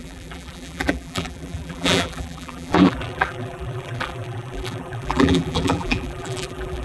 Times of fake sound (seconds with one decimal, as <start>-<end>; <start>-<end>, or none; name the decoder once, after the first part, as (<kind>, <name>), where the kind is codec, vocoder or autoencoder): 0.0-6.8 (vocoder, BigVGAN v2)